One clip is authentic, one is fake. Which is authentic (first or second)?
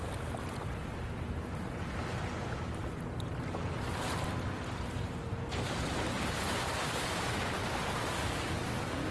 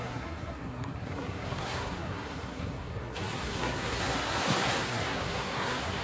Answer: first